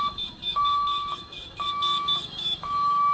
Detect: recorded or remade remade